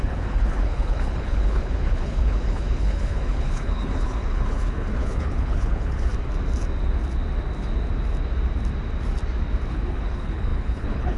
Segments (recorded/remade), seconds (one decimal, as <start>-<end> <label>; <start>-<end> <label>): 0.0-6.1 remade; 6.1-9.7 recorded; 9.7-11.2 remade